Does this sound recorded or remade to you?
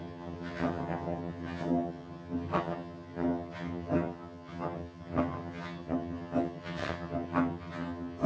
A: remade